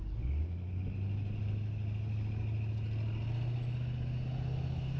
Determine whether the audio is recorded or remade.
recorded